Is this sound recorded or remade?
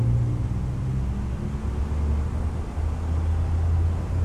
recorded